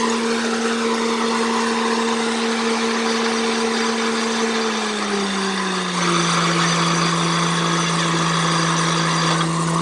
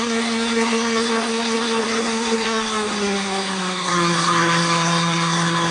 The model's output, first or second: second